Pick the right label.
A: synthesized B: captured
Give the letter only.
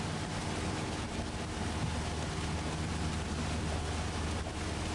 B